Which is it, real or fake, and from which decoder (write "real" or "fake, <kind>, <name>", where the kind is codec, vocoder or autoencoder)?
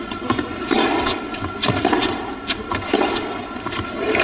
fake, vocoder, BigVGAN v2